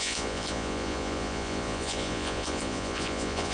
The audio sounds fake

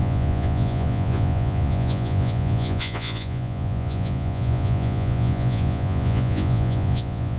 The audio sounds fake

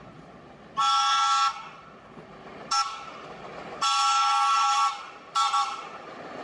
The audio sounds real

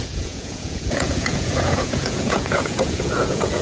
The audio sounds fake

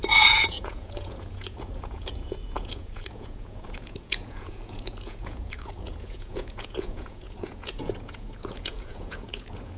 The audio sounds fake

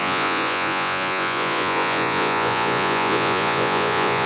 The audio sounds fake